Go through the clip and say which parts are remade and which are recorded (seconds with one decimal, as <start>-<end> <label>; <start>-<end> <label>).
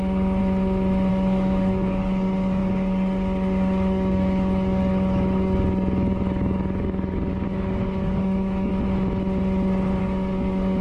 0.0-0.4 remade; 0.4-1.1 recorded; 1.1-8.7 remade; 8.7-10.0 recorded; 10.0-10.8 remade